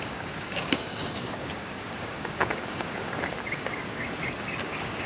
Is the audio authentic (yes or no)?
no